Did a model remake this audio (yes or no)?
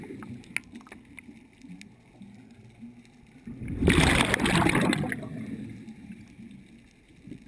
no